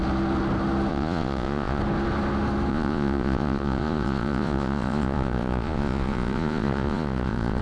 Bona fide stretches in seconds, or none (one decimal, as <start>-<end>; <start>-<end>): 0.0-0.9; 1.8-2.7